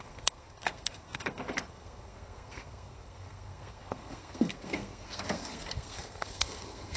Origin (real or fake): fake